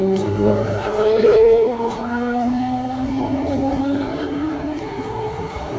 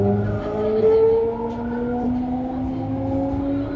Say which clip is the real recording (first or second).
second